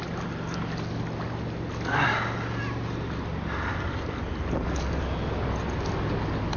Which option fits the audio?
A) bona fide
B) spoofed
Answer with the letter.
A